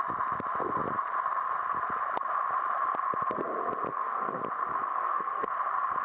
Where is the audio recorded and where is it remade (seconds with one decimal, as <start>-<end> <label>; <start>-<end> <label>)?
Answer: 0.0-3.9 recorded; 3.9-4.4 remade; 4.4-4.9 recorded; 4.9-5.5 remade; 5.5-6.0 recorded